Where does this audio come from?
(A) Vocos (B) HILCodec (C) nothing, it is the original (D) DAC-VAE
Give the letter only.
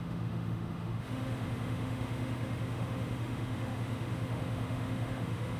D